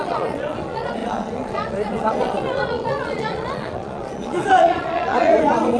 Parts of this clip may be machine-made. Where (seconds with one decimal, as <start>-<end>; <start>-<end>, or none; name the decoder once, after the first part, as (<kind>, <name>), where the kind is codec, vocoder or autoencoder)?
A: 0.0-5.8 (vocoder, Vocos)